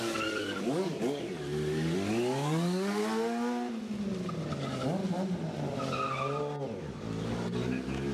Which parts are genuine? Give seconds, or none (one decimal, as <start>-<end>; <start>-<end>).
3.0-4.5; 5.0-6.8